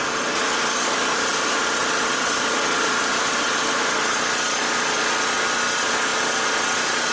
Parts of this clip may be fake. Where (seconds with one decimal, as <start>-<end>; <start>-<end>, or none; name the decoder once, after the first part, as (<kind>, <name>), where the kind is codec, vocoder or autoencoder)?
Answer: none